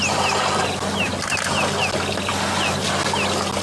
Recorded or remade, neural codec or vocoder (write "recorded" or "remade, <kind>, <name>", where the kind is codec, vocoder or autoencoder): recorded